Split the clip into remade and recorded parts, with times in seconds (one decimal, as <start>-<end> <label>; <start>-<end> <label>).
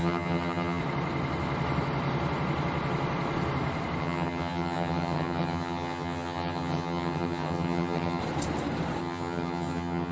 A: 0.0-0.8 remade; 0.8-4.0 recorded; 4.0-8.2 remade; 8.2-9.0 recorded; 9.0-10.1 remade